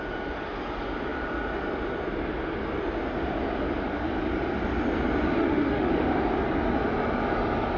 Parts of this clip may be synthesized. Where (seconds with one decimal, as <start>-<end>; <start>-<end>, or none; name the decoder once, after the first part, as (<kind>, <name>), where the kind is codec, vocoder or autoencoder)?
5.4-5.9 (autoencoder, DAC-VAE)